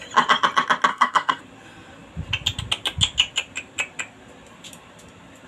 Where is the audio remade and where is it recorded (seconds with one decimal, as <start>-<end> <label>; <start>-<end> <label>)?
0.0-0.9 recorded; 0.9-1.4 remade; 1.4-5.5 recorded